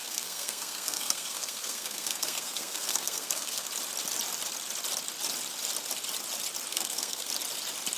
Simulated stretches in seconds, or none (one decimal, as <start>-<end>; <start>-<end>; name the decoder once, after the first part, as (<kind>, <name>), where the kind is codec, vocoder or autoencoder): 0.0-3.7 (codec, SNAC); 6.7-7.3